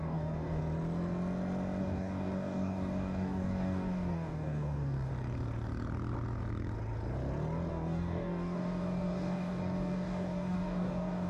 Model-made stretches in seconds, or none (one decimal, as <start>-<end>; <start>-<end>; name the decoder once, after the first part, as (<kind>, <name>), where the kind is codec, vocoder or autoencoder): 0.0-0.6 (codec, DAC); 1.8-5.1; 7.7-11.3